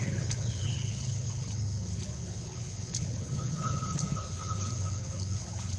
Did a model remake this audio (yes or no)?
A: yes